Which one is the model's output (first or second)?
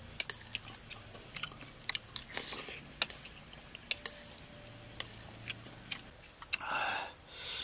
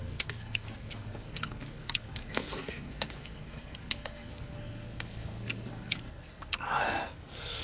second